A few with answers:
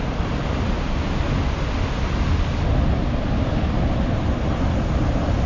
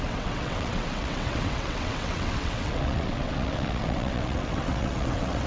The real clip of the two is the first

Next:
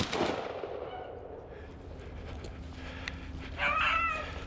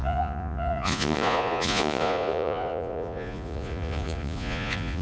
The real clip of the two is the first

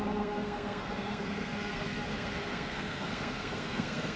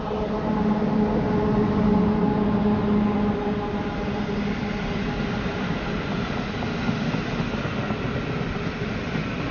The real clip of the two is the second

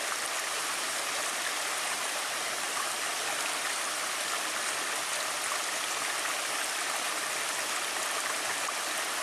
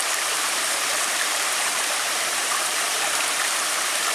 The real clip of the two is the first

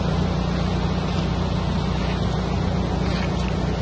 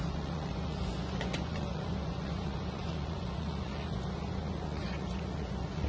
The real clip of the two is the first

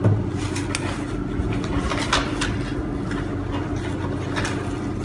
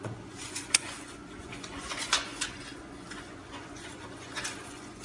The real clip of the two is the first